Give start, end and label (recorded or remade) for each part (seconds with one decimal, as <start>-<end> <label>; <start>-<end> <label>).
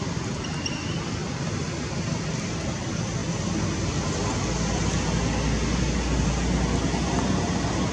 0.0-7.9 recorded